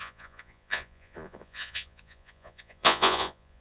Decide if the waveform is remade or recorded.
remade